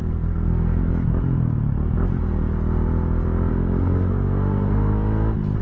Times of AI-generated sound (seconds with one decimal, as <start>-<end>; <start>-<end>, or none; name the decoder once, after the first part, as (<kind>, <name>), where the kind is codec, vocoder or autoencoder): 0.0-0.8 (codec, SNAC); 3.5-4.9